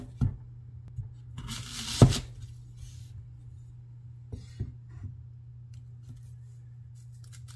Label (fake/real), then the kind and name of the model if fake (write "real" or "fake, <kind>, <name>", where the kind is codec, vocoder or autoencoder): real